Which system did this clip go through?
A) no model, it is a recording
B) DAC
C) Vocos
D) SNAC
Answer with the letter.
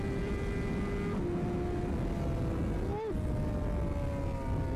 A